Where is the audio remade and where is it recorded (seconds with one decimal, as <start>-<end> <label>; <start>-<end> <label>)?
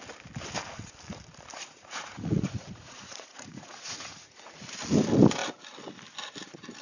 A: 0.0-1.5 recorded; 1.5-4.6 remade; 4.6-6.8 recorded